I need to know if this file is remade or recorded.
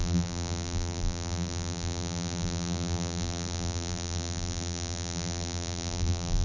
remade